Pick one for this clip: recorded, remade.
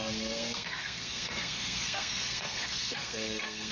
remade